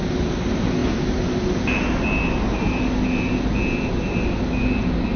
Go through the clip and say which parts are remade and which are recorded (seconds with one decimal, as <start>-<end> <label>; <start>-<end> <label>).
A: 0.0-5.2 recorded